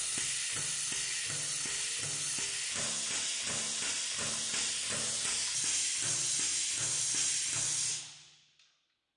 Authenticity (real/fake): real